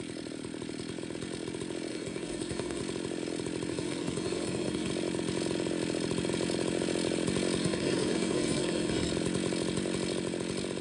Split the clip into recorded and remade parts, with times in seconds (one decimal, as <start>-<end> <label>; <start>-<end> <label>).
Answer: 0.0-1.9 recorded; 1.9-2.8 remade; 2.8-3.7 recorded; 3.7-4.9 remade; 4.9-7.6 recorded; 7.6-9.1 remade; 9.1-10.8 recorded